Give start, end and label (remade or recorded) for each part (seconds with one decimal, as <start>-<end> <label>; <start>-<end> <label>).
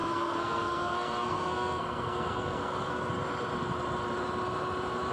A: 0.0-3.1 remade; 3.1-5.1 recorded